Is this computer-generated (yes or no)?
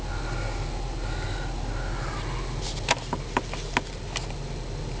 no